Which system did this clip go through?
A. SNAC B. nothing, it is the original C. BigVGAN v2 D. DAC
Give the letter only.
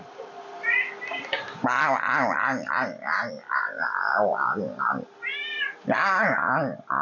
B